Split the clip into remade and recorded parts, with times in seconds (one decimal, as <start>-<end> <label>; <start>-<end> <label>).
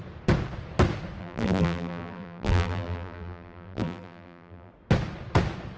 0.0-1.2 recorded; 1.2-4.7 remade; 4.7-5.8 recorded